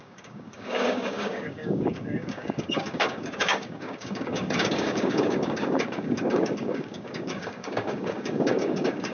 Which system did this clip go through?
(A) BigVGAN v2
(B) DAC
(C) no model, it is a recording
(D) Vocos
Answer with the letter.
B